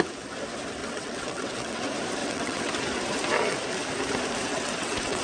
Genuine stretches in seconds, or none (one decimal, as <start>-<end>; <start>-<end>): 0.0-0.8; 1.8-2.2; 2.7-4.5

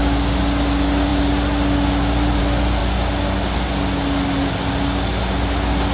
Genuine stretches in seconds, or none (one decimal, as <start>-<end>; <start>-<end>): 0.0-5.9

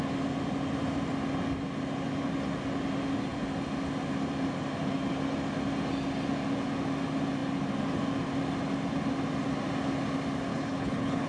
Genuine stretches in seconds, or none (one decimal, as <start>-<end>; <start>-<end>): 0.0-10.5

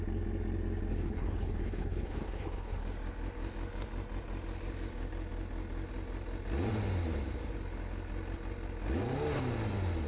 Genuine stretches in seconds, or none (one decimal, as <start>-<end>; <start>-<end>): 0.0-0.9; 2.8-10.1

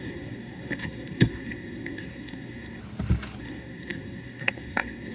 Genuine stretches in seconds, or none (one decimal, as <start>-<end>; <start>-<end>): 2.8-3.4